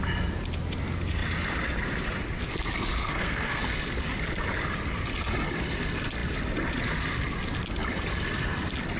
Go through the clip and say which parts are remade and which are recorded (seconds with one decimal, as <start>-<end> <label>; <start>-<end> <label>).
0.0-3.0 recorded; 3.0-3.6 remade; 3.6-9.0 recorded